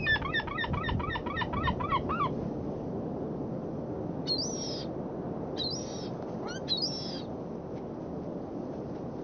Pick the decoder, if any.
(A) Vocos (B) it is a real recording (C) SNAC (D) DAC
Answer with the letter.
B